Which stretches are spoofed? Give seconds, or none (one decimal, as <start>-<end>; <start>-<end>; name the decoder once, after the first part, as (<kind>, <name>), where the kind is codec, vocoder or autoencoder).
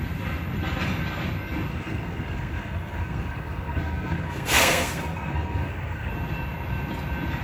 1.7-6.1 (codec, SNAC)